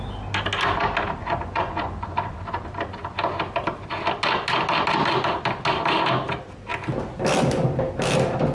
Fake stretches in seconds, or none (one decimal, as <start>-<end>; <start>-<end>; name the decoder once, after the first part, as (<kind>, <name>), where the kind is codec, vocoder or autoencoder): 1.2-2.4 (vocoder, Vocos)